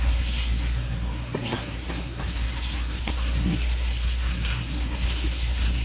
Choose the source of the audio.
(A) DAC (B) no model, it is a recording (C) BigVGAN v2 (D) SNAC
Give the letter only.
D